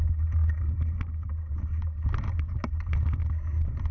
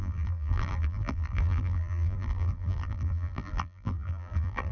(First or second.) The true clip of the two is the first